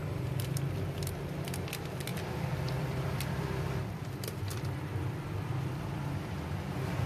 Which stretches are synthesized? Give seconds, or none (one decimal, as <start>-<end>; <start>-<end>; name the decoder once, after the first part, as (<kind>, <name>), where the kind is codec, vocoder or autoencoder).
2.1-6.3 (vocoder, BigVGAN v2)